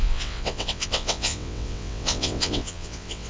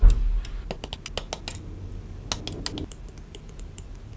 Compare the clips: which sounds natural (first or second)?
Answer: second